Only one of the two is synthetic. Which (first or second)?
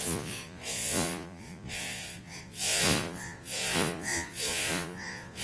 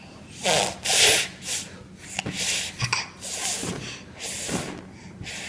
first